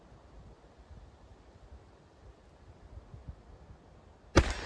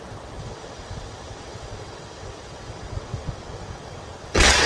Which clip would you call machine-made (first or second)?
second